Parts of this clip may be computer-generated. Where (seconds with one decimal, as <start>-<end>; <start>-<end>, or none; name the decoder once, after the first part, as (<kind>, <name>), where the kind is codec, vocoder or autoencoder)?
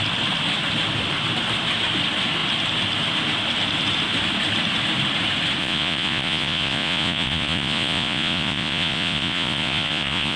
5.6-10.4 (vocoder, Vocos)